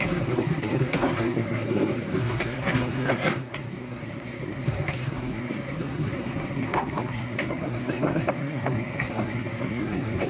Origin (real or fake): fake